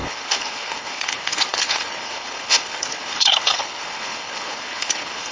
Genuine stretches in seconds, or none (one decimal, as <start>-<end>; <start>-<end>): none